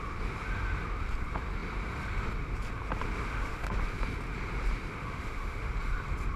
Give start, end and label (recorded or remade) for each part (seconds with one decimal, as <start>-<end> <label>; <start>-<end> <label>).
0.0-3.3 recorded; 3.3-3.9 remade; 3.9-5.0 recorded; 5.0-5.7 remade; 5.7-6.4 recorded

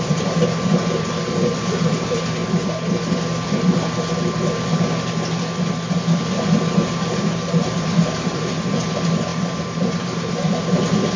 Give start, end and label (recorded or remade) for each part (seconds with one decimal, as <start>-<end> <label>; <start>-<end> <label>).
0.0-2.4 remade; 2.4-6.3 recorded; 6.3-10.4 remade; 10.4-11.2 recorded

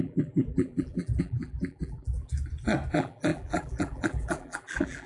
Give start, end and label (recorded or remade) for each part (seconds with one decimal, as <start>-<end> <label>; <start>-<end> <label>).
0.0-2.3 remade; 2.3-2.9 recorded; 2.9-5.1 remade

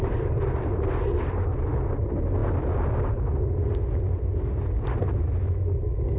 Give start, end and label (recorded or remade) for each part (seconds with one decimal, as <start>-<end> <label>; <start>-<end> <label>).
0.0-6.2 recorded